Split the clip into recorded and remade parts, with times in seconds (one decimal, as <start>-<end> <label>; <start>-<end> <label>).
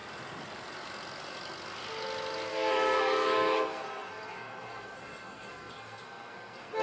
0.0-2.5 recorded; 2.5-6.8 remade